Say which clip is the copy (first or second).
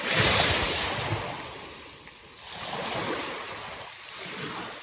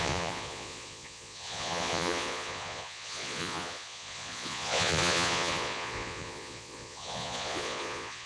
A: second